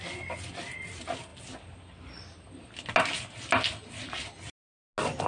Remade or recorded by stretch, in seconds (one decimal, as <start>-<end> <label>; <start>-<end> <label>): 0.0-5.3 recorded